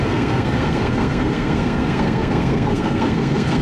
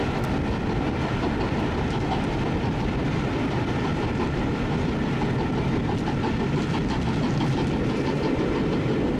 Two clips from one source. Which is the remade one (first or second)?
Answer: first